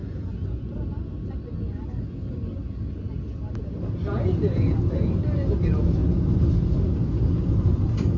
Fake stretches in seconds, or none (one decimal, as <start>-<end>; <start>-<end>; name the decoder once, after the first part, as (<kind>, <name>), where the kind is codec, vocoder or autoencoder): none